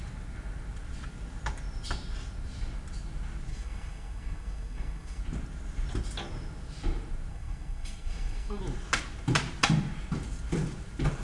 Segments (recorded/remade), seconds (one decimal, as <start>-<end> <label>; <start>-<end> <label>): 0.0-3.5 recorded; 3.5-5.2 remade; 5.2-7.3 recorded; 7.3-8.6 remade; 8.6-11.2 recorded